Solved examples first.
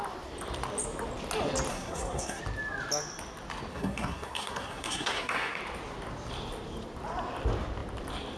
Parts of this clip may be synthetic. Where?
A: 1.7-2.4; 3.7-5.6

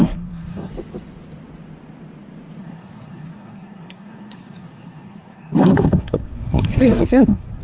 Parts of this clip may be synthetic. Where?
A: 0.0-0.7; 2.6-7.6

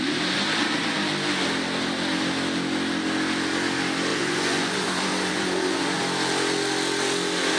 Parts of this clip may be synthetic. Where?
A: 4.1-6.0